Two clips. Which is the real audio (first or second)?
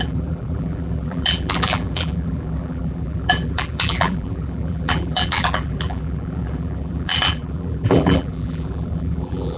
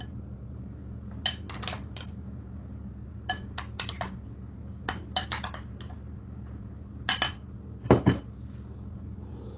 second